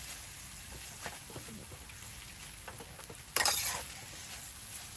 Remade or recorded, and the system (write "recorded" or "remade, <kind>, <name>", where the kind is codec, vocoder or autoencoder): recorded